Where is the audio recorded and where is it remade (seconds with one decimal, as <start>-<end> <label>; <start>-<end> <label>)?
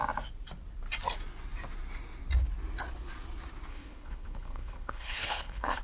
0.0-3.7 recorded; 3.7-5.8 remade